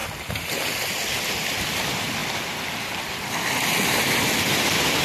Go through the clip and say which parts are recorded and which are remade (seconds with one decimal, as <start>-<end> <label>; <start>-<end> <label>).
0.0-5.0 recorded